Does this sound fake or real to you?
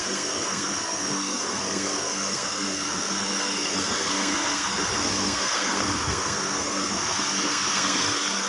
fake